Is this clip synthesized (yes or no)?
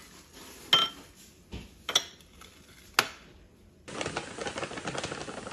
no